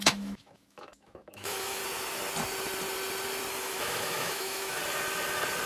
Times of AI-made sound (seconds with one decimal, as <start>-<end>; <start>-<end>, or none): 0.0-1.8; 3.6-4.8